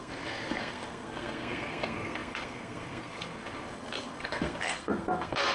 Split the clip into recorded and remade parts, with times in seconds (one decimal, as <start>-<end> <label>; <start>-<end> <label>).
0.0-5.5 remade